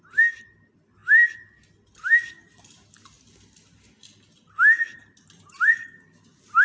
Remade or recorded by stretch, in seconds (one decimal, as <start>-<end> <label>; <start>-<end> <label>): 0.0-4.9 recorded; 4.9-5.7 remade; 5.7-6.6 recorded